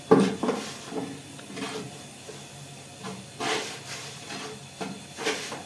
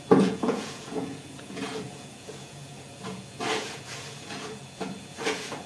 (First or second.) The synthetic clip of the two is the second